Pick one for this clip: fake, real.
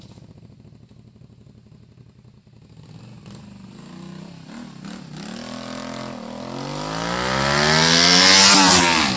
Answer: real